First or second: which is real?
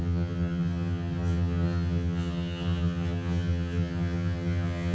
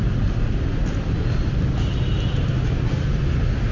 second